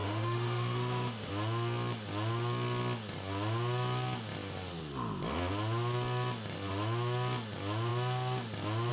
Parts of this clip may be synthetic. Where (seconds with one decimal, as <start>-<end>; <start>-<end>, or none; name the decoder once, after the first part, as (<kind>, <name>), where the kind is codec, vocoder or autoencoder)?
0.0-1.3 (autoencoder, DAC-VAE)